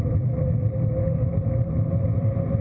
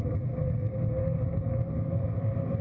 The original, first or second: first